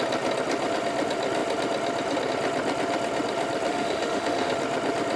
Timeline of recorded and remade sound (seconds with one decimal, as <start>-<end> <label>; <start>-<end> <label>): 0.0-3.7 recorded; 3.7-4.5 remade; 4.5-5.2 recorded